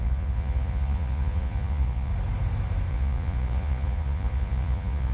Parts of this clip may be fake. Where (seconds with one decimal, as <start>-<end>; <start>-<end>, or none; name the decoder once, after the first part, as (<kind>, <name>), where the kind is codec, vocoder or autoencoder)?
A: 0.0-2.1 (vocoder, Vocos); 2.9-5.1